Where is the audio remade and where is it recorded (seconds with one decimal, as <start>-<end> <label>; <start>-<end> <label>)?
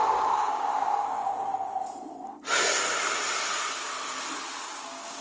0.0-1.5 remade; 1.5-4.6 recorded; 4.6-5.2 remade